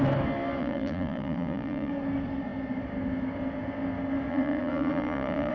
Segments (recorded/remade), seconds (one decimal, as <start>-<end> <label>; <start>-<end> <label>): 0.0-0.6 recorded; 0.6-1.9 remade; 1.9-4.3 recorded; 4.3-5.5 remade